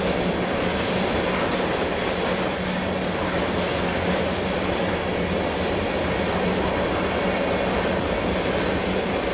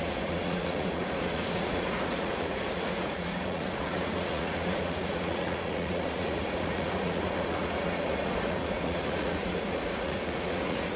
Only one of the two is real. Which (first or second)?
first